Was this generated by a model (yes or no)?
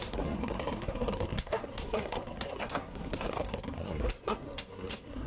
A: yes